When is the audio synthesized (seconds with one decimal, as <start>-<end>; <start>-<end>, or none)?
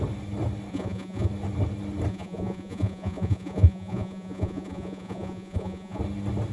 0.7-1.3; 2.1-6.0